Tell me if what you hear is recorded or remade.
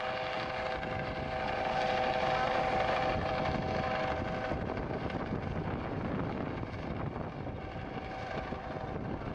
recorded